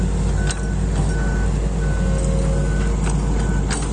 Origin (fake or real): real